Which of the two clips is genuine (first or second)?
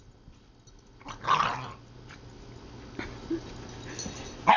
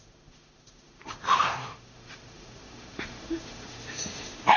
first